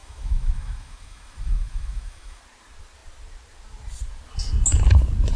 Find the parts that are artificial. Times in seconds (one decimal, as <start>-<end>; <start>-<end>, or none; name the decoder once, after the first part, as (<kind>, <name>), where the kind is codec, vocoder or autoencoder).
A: 0.0-2.4 (autoencoder, DAC-VAE)